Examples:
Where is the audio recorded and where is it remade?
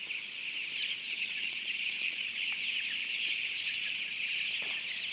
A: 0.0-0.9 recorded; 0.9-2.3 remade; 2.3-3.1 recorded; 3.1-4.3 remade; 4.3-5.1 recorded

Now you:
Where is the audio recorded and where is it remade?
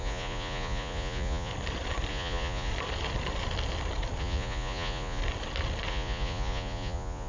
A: 0.0-1.5 remade; 1.5-2.1 recorded; 2.1-2.7 remade; 2.7-4.2 recorded; 4.2-5.2 remade; 5.2-5.9 recorded; 5.9-7.3 remade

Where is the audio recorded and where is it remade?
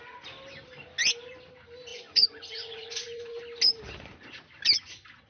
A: 0.0-1.9 recorded; 1.9-3.4 remade; 3.4-5.3 recorded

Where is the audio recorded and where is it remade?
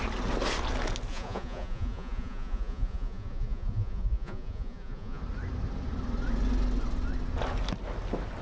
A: 0.0-1.1 recorded; 1.1-5.2 remade; 5.2-8.4 recorded